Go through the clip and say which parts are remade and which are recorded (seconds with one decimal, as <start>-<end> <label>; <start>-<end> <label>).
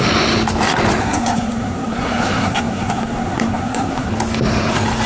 0.0-1.0 recorded; 1.0-4.1 remade; 4.1-5.1 recorded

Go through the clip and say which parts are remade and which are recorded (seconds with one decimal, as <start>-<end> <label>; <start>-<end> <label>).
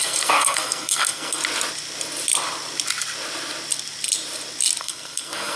0.0-1.4 remade; 1.4-4.8 recorded; 4.8-5.6 remade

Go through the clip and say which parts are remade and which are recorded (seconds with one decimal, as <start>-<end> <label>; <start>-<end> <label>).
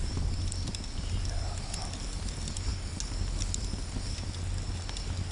0.0-5.3 recorded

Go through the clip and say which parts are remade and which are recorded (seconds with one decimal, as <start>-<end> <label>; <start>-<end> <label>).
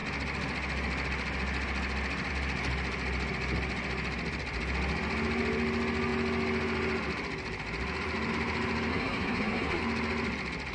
0.0-8.9 recorded; 8.9-9.8 remade; 9.8-10.7 recorded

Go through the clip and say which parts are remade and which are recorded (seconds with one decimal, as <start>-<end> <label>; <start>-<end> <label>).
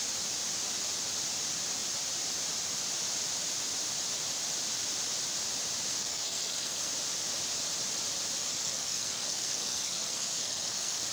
0.0-5.9 recorded; 5.9-6.9 remade; 6.9-8.4 recorded; 8.4-11.1 remade